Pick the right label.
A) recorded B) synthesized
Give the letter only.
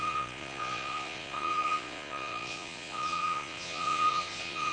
B